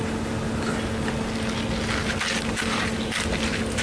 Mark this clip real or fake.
real